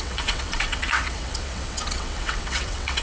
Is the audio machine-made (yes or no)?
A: yes